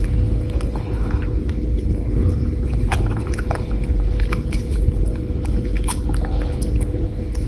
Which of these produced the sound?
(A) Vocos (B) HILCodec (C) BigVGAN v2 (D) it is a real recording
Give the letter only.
B